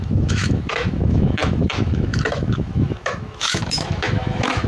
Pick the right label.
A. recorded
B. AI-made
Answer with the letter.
B